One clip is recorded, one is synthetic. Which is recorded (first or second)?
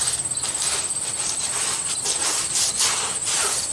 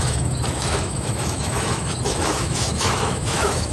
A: first